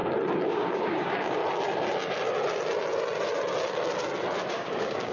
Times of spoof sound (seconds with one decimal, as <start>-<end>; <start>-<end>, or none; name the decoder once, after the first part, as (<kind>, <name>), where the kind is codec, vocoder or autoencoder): 0.5-1.4 (codec, DAC); 4.5-5.1